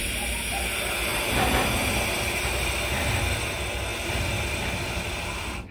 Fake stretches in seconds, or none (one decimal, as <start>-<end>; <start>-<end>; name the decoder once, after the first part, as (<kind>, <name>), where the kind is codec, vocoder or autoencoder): 1.1-1.9 (vocoder, BigVGAN v2); 3.9-4.6

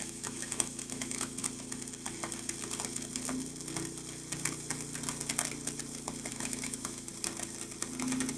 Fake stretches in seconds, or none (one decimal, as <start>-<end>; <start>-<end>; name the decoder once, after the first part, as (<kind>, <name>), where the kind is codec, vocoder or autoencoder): 0.0-1.4 (autoencoder, DAC-VAE); 6.3-7.1

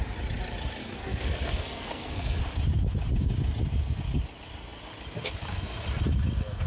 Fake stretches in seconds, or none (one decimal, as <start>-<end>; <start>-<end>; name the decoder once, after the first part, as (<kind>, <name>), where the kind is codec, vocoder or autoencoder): 0.8-2.4 (codec, SNAC)

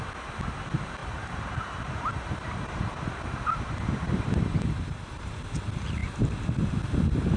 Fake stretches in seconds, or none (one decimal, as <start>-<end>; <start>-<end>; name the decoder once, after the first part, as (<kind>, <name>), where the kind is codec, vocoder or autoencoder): 1.0-5.4 (vocoder, BigVGAN v2)

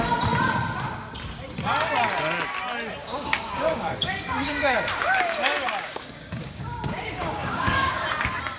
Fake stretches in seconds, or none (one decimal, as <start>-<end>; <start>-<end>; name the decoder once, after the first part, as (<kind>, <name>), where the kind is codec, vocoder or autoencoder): 3.0-8.0 (codec, DAC)

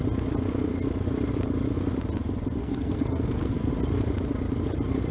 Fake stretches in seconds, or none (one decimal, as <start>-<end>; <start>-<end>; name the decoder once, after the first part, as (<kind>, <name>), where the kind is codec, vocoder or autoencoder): 2.6-3.7 (codec, SNAC)

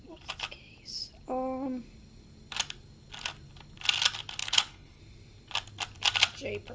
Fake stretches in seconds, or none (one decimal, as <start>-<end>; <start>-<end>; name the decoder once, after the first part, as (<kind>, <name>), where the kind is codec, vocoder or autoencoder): 4.4-5.0 (codec, HILCodec)

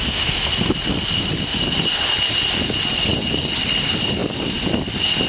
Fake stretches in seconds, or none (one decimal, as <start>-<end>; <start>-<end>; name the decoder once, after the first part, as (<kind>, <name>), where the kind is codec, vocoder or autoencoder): none